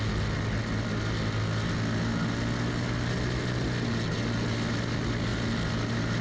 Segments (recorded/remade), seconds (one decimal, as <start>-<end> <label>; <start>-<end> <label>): 0.0-6.2 recorded